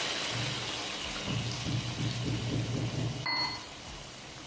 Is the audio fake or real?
real